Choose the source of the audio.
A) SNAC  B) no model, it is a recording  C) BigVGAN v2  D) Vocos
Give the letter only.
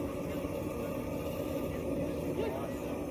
B